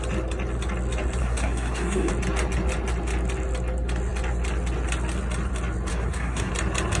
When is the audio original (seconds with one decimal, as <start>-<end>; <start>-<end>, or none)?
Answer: 0.0-1.2; 2.1-5.9; 6.5-7.0